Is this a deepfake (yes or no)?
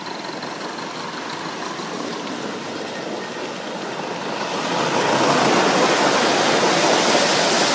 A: no